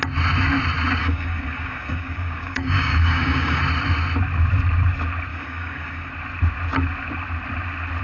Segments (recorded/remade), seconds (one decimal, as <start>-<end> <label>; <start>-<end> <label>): 0.0-1.0 recorded; 1.0-3.6 remade; 3.6-5.3 recorded; 5.3-6.1 remade; 6.1-8.0 recorded